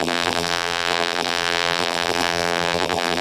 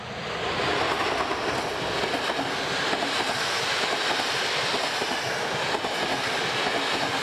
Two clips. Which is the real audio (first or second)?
second